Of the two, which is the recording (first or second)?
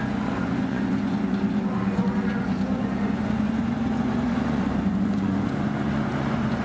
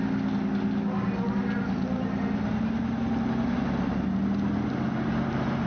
second